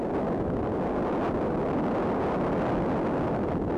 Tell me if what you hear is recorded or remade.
recorded